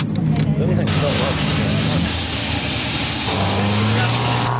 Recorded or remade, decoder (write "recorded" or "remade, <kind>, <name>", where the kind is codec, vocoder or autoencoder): recorded